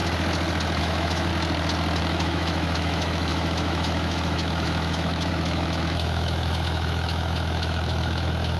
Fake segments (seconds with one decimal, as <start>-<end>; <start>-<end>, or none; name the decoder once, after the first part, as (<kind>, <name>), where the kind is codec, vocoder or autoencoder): 0.8-1.3 (autoencoder, DAC-VAE); 2.0-8.6